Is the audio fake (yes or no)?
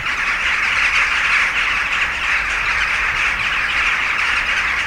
no